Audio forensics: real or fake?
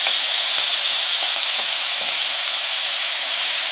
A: fake